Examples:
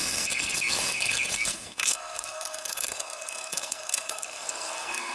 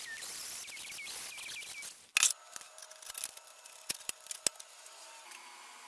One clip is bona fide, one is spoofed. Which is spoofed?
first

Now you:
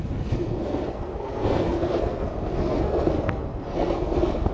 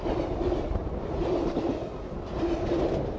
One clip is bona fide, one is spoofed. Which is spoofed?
first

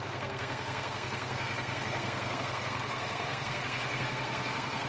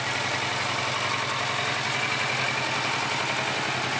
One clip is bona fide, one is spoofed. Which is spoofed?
first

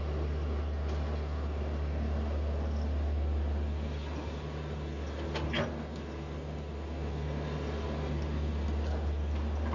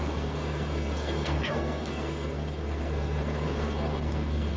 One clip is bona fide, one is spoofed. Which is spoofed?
second